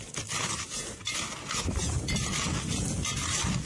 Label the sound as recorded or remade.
recorded